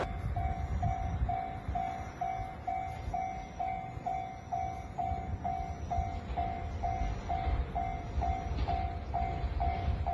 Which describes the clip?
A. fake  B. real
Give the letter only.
B